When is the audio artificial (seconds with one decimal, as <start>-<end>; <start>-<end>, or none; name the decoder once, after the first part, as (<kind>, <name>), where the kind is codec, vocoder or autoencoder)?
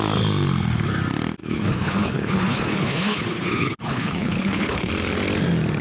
1.4-4.9 (codec, HILCodec)